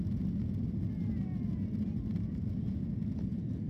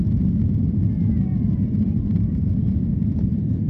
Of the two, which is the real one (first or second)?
first